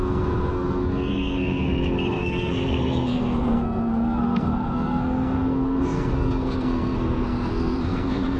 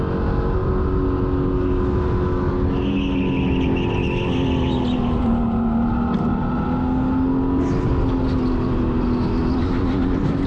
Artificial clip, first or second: first